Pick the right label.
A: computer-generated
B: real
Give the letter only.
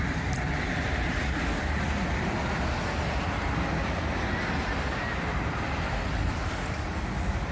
B